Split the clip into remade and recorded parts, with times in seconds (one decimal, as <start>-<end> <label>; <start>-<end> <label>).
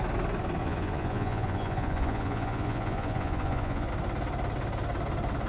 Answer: 0.0-0.6 recorded; 0.6-3.9 remade; 3.9-5.5 recorded